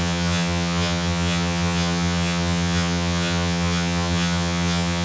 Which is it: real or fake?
fake